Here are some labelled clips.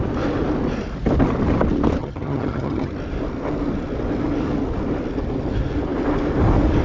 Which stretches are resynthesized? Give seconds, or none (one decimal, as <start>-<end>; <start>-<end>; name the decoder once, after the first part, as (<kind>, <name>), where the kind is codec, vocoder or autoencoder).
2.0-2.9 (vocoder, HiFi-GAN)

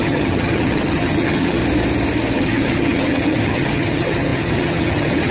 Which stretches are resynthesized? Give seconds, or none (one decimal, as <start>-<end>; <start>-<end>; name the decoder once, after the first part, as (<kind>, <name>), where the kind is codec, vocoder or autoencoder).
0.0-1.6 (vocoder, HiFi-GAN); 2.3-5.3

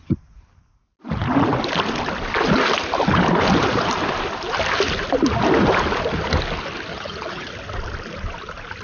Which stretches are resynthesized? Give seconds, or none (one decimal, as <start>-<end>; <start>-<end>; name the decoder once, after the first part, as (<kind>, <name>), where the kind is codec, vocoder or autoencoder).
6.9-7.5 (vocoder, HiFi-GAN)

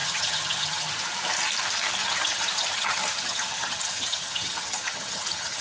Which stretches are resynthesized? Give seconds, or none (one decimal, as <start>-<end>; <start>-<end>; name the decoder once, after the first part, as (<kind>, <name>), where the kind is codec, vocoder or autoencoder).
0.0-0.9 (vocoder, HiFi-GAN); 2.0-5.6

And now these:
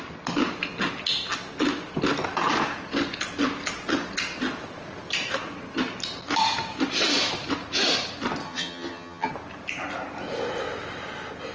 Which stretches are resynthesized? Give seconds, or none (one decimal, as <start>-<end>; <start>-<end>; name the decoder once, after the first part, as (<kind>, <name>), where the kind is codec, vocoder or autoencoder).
8.4-9.3 (vocoder, HiFi-GAN)

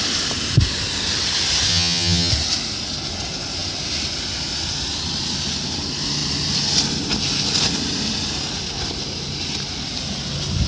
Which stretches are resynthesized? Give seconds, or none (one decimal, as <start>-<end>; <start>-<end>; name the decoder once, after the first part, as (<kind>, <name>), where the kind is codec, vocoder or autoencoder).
1.7-2.3 (vocoder, HiFi-GAN)